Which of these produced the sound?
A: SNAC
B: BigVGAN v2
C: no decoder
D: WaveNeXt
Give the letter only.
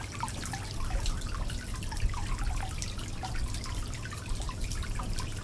C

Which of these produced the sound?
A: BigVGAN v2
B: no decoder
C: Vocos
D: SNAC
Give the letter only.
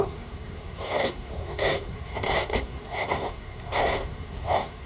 D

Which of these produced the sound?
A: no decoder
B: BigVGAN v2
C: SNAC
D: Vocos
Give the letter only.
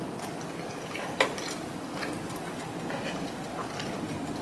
A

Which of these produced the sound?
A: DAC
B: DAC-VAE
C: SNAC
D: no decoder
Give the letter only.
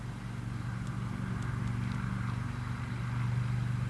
D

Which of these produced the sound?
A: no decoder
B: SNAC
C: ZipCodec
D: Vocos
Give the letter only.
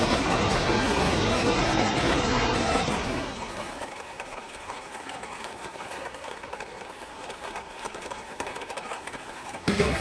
B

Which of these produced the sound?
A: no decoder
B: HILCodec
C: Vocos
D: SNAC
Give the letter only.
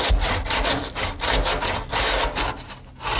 A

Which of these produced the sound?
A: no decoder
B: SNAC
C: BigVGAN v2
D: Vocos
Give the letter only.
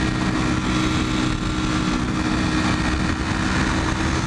A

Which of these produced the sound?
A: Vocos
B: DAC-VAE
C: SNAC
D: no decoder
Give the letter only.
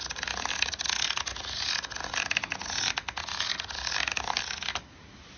D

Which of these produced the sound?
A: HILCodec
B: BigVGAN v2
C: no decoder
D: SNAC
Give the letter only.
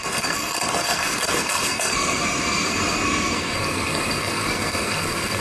D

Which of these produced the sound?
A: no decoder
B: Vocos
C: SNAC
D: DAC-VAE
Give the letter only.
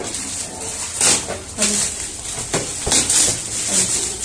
A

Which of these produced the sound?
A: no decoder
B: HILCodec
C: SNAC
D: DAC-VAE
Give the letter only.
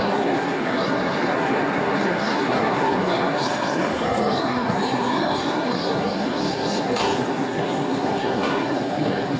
C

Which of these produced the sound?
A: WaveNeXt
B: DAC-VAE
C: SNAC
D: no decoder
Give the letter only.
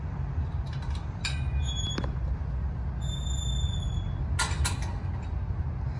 D